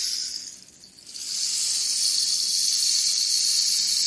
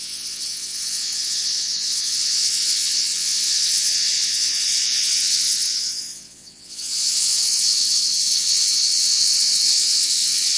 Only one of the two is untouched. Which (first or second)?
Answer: first